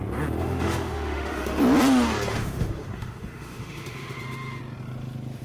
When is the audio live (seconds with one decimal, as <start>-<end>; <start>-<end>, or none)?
0.0-0.4; 1.6-2.3; 4.6-5.4